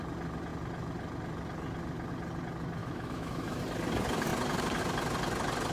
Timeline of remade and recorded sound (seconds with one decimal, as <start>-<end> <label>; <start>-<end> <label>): 0.0-2.8 recorded; 2.8-3.6 remade; 3.6-5.7 recorded